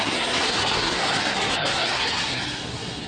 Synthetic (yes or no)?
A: yes